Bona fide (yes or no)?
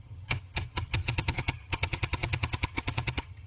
no